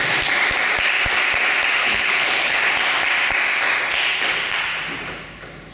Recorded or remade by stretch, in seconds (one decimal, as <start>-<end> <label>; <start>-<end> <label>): 0.0-1.8 recorded; 1.8-2.6 remade; 2.6-5.7 recorded